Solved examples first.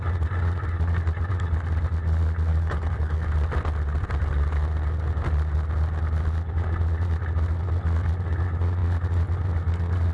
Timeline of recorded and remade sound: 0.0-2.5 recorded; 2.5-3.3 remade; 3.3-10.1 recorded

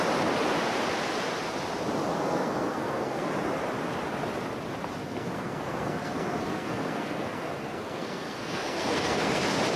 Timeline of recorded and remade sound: 0.0-2.1 recorded; 2.1-3.3 remade; 3.3-5.0 recorded; 5.0-9.4 remade; 9.4-9.8 recorded

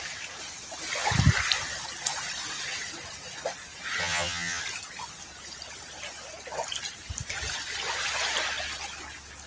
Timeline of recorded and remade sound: 0.0-4.0 recorded; 4.0-4.6 remade; 4.6-9.5 recorded